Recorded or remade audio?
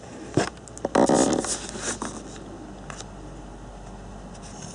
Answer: recorded